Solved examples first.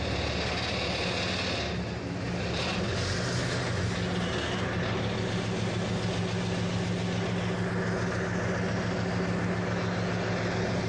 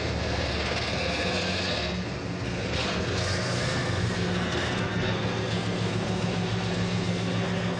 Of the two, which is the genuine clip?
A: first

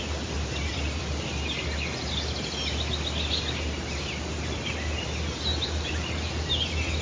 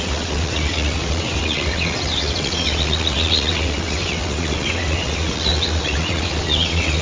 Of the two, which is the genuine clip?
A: first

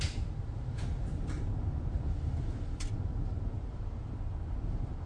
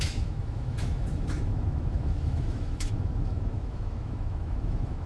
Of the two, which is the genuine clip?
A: first